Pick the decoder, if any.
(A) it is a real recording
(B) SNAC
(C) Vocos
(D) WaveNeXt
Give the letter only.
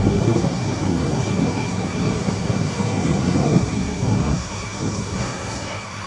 B